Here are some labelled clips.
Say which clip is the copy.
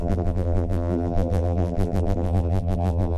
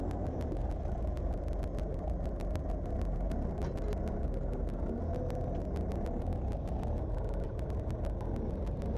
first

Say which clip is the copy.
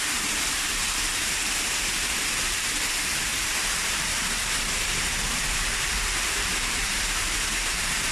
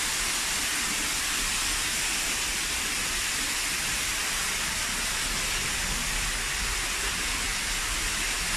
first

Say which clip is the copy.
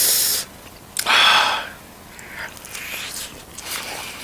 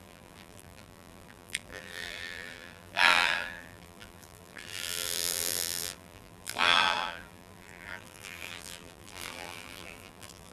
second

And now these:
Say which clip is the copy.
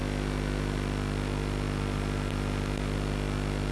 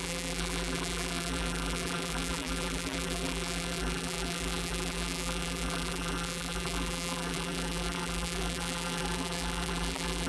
second